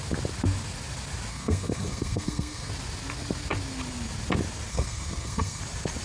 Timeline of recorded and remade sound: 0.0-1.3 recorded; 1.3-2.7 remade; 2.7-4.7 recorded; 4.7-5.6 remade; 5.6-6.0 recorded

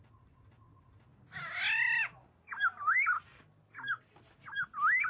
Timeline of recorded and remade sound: 0.0-5.1 recorded

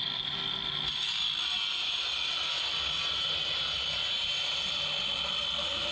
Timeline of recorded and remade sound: 0.0-5.9 recorded